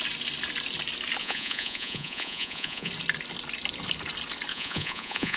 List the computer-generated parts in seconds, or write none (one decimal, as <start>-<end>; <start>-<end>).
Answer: 1.2-2.9; 4.5-5.4